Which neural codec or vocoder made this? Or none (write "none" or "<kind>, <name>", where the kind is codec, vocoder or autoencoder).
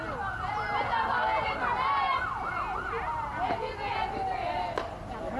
none